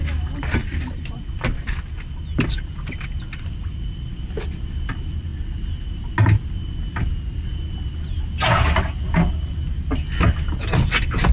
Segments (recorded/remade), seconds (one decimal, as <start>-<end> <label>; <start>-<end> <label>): 0.0-0.6 recorded; 0.6-4.2 remade; 4.2-11.3 recorded